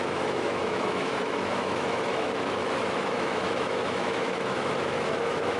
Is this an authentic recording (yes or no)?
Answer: no